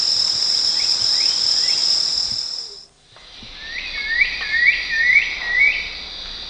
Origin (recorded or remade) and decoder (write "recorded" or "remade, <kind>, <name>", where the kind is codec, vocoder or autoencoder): recorded